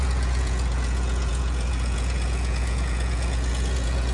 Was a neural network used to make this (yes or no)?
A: yes